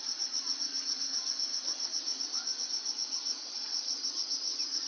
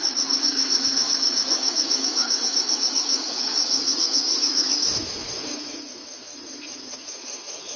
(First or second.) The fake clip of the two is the second